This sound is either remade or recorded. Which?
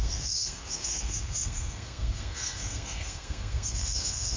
remade